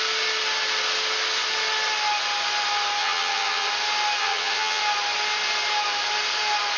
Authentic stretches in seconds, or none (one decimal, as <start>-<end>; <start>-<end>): 0.0-3.0; 3.7-4.2; 4.8-6.8